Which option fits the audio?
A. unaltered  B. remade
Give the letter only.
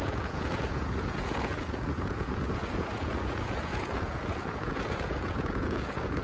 B